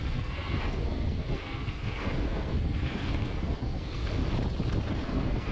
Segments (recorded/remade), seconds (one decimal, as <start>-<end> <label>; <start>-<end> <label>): 0.0-4.2 remade; 4.2-4.9 recorded; 4.9-5.5 remade

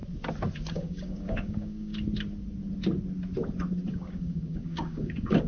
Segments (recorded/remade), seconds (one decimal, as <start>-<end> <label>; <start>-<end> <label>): 0.0-0.7 recorded; 0.7-1.9 remade; 1.9-3.9 recorded; 3.9-5.5 remade

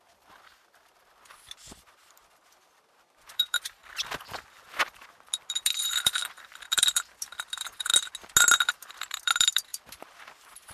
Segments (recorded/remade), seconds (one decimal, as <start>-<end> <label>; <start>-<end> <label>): 0.0-3.8 remade; 3.8-4.8 recorded; 4.8-7.9 remade; 7.9-8.7 recorded; 8.7-10.7 remade

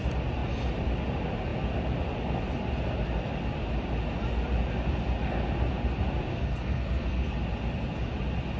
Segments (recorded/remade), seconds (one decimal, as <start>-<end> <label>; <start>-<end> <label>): 0.0-6.3 recorded; 6.3-7.3 remade; 7.3-8.6 recorded